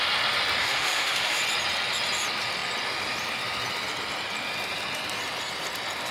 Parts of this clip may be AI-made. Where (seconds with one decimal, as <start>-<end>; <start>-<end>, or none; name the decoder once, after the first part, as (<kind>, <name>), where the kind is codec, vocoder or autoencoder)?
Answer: 0.6-1.4 (autoencoder, DAC-VAE)